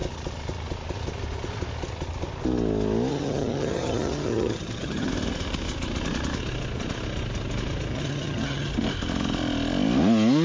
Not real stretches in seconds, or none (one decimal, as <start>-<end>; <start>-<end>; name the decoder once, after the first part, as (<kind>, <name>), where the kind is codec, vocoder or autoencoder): 3.1-5.1 (vocoder, HiFi-GAN); 7.9-8.7

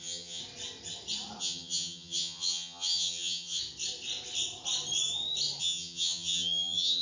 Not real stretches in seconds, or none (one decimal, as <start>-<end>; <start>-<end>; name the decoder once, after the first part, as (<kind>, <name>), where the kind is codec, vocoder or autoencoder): 0.0-0.4 (vocoder, HiFi-GAN); 1.4-3.6; 5.6-7.0